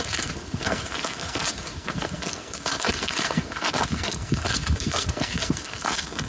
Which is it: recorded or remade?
remade